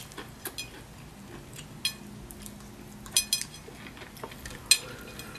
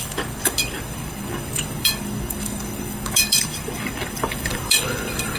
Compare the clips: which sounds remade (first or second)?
second